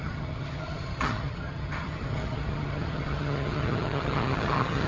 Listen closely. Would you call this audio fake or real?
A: fake